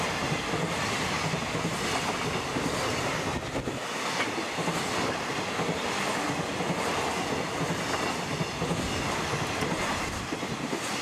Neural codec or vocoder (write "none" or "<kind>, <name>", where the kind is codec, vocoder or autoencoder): none